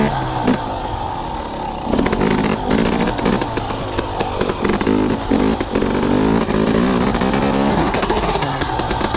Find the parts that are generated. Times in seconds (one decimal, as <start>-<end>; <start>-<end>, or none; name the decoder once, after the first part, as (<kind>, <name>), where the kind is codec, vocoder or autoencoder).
7.7-8.7 (codec, SNAC)